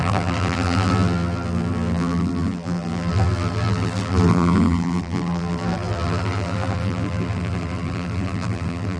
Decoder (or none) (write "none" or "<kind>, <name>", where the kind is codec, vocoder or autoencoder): vocoder, BigVGAN v2